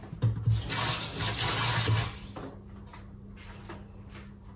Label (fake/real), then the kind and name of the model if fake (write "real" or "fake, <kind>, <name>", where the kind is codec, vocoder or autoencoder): real